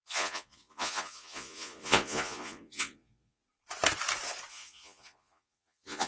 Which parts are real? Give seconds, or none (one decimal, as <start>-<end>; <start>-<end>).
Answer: 3.4-4.5